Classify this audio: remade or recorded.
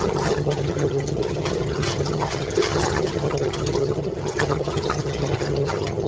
remade